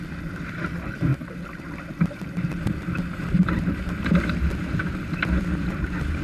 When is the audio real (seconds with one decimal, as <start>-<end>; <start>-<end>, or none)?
0.0-6.2